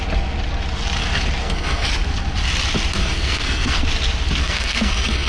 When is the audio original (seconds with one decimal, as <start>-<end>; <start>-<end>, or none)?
0.0-1.4; 1.9-3.0; 3.8-4.4

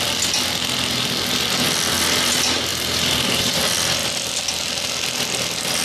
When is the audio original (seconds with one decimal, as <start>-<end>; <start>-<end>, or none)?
0.0-2.7; 3.6-5.8

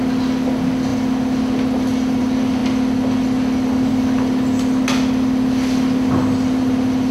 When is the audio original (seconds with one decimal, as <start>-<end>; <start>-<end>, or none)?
0.0-7.1